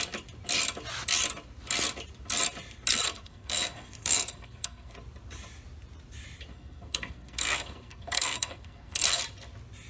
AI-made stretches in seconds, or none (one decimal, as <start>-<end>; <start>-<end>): 2.9-4.9; 6.5-9.2

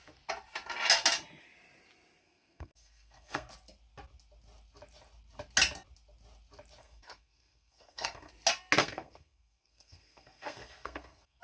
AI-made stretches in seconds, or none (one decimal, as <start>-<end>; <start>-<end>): 2.2-3.5; 6.8-8.3; 8.8-11.4

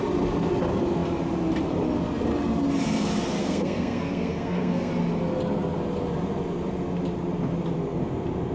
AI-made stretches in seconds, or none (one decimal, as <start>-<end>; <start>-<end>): 3.4-4.9